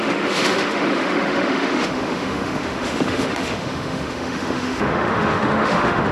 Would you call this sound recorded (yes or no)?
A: no